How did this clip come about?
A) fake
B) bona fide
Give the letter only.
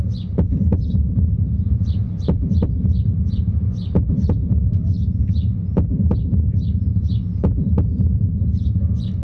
A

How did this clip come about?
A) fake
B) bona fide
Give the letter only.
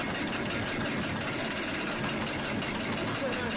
A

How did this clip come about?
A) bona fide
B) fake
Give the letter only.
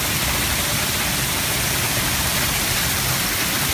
B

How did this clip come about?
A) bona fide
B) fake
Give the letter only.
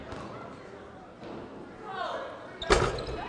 A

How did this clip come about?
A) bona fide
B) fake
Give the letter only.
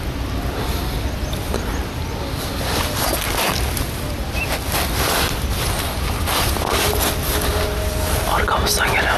A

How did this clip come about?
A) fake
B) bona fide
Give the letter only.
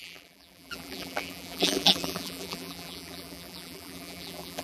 A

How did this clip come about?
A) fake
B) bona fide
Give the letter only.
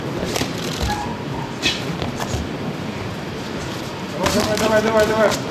A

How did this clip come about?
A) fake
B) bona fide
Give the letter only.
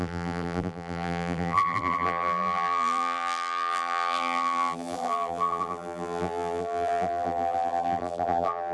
A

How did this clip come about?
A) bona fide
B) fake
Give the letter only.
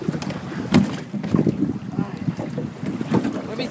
A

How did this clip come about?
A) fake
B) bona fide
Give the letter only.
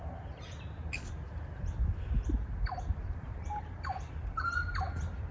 A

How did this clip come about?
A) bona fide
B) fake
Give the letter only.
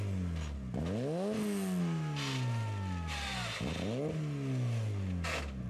A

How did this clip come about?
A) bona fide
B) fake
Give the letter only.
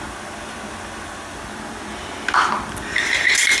A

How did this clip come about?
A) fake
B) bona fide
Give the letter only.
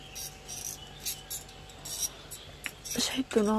B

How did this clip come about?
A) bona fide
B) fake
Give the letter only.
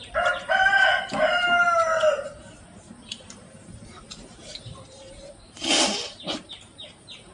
B